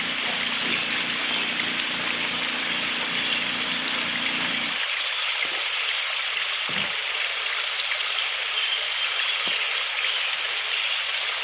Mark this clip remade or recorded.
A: recorded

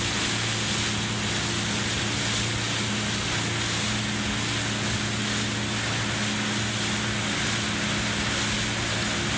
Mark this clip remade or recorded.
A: recorded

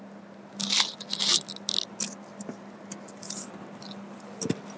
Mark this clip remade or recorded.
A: recorded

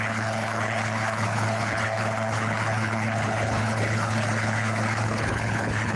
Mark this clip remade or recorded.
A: remade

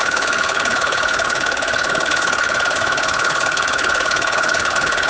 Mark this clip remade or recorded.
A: remade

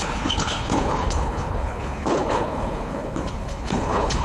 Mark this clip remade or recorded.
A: remade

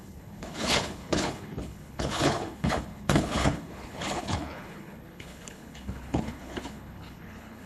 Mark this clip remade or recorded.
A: remade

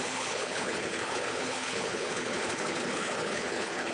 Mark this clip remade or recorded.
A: remade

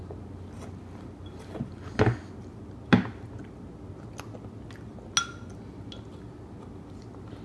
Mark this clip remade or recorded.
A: recorded